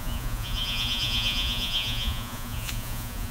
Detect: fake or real fake